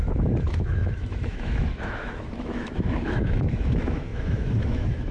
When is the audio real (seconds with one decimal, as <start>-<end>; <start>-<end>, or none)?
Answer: none